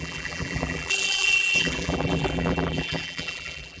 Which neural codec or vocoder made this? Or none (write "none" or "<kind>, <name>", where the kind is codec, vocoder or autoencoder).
vocoder, BigVGAN v2